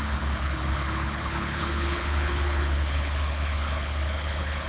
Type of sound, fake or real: fake